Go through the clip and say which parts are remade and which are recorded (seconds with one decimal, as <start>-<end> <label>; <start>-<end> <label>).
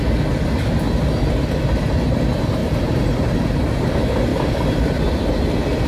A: 0.0-2.6 recorded; 2.6-3.9 remade; 3.9-4.3 recorded; 4.3-5.0 remade; 5.0-5.9 recorded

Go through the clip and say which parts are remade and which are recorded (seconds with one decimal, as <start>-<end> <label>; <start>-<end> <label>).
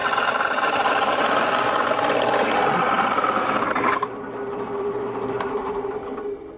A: 0.0-1.6 remade; 1.6-4.0 recorded; 4.0-5.9 remade; 5.9-6.6 recorded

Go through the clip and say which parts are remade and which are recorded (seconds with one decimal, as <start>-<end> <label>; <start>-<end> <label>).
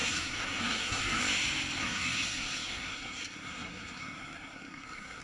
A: 0.0-1.2 remade; 1.2-1.8 recorded; 1.8-5.2 remade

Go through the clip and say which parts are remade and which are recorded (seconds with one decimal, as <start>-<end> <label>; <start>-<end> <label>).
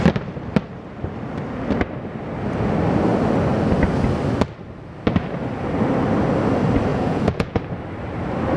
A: 0.0-6.9 recorded; 6.9-7.6 remade; 7.6-8.6 recorded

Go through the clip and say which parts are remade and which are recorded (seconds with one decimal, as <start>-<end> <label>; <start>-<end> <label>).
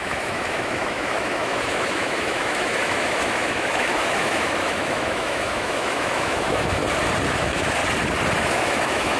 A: 0.0-6.8 remade; 6.8-7.3 recorded; 7.3-7.8 remade; 7.8-8.4 recorded; 8.4-9.2 remade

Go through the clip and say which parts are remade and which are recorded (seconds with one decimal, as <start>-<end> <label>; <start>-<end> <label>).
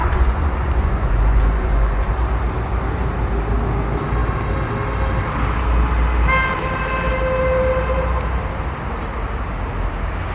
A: 0.0-2.1 remade; 2.1-10.3 recorded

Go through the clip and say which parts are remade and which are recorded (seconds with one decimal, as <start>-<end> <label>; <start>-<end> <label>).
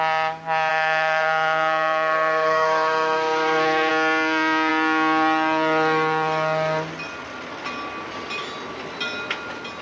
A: 0.0-0.7 recorded; 0.7-3.9 remade; 3.9-9.8 recorded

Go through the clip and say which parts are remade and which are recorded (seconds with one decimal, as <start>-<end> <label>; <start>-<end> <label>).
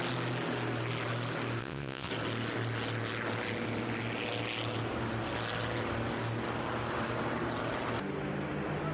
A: 0.0-1.6 recorded; 1.6-2.1 remade; 2.1-8.9 recorded